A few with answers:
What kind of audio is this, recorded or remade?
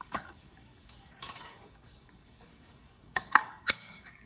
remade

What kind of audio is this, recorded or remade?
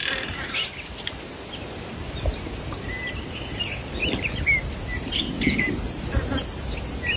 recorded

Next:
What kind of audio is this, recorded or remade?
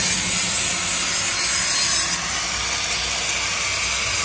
recorded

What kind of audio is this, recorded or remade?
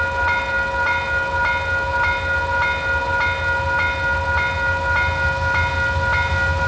recorded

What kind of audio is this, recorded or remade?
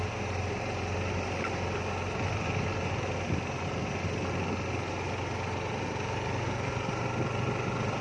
recorded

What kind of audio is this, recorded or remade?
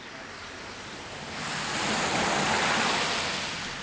recorded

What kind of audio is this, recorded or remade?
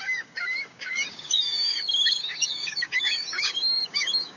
remade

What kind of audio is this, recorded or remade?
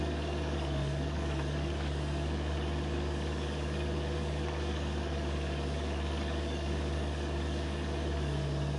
remade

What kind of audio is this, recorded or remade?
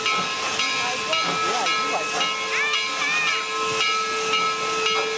recorded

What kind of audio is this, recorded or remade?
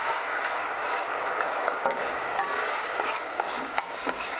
remade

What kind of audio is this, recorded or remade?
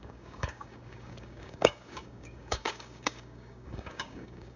remade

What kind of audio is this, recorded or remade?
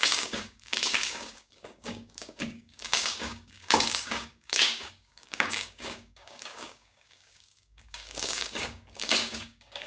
remade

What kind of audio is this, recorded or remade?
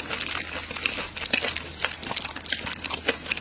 recorded